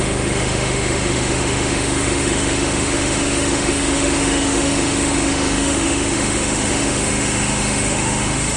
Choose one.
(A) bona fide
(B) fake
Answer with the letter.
B